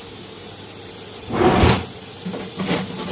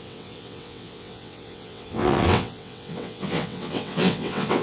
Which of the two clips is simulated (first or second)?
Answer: second